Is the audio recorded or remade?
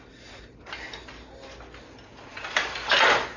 recorded